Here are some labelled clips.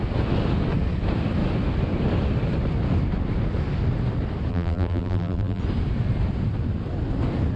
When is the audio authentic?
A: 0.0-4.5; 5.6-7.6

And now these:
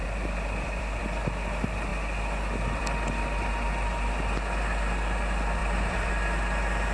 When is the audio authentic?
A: 1.0-5.6; 6.1-6.9

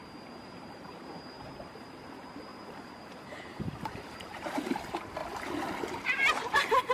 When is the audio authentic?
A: 5.2-6.0